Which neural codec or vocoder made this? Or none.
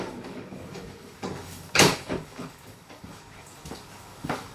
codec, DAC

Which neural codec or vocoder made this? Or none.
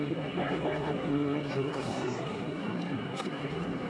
codec, SNAC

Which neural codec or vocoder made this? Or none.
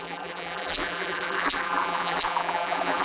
vocoder, BigVGAN v2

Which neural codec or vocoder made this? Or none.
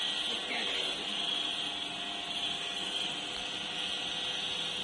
none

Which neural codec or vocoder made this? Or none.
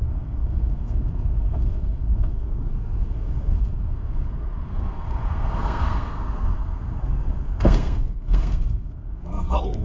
codec, SNAC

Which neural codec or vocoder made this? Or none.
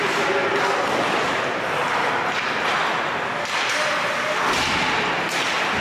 none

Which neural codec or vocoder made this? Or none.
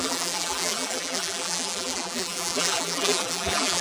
vocoder, BigVGAN v2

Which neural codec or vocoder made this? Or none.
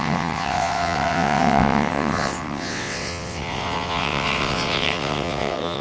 vocoder, WaveNeXt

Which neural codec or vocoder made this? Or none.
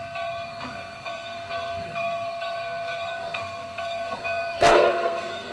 codec, SNAC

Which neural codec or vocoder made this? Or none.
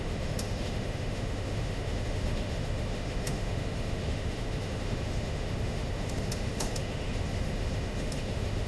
autoencoder, DAC-VAE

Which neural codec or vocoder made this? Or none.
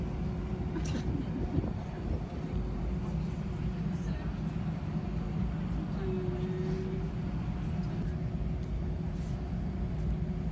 none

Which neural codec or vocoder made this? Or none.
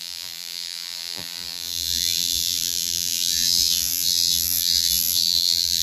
vocoder, BigVGAN v2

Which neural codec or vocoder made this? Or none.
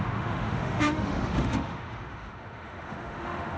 autoencoder, DAC-VAE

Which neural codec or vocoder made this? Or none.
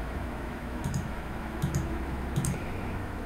autoencoder, DAC-VAE